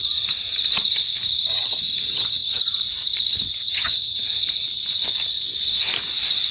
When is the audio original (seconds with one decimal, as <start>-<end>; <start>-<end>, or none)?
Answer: 0.0-1.5; 2.6-3.7; 4.2-6.5